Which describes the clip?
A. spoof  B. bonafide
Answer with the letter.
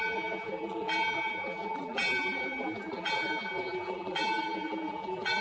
A